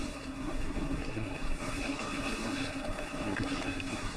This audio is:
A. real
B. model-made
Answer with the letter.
B